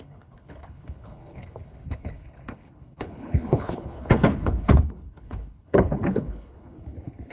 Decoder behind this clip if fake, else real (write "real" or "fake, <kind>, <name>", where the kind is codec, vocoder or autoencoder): fake, codec, HILCodec